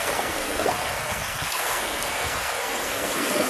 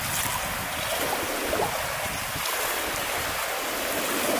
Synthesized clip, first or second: first